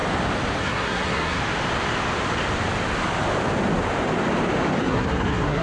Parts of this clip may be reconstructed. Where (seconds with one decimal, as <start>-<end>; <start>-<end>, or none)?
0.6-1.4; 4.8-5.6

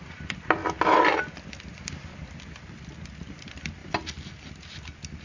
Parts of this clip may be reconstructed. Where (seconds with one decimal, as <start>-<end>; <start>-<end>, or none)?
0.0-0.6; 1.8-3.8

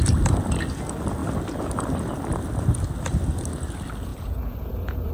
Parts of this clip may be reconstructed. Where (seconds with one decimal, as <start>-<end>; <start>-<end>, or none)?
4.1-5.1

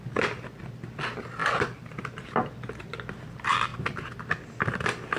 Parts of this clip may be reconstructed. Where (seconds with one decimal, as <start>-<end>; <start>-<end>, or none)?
none